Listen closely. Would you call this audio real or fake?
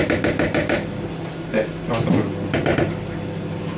real